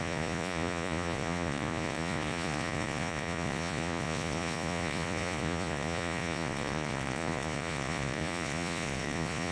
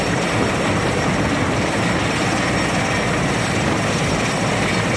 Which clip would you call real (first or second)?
second